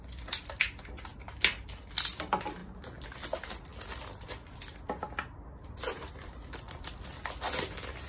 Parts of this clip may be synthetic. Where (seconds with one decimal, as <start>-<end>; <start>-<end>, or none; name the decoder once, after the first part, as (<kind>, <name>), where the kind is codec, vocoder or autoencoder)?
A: 2.6-3.2 (vocoder, BigVGAN v2); 3.7-7.2